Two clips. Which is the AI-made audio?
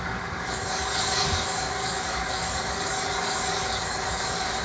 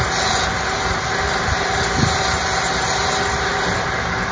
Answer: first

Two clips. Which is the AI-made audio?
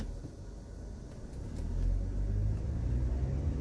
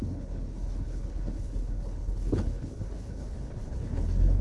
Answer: second